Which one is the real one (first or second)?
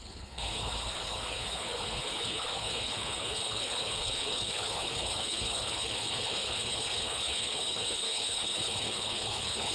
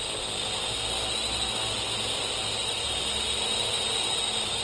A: second